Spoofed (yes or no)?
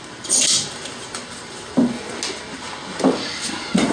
no